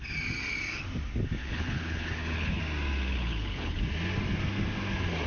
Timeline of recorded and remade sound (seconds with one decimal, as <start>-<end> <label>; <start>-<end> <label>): 0.0-1.4 recorded; 1.4-2.6 remade; 2.6-3.1 recorded; 3.1-3.8 remade; 3.8-5.3 recorded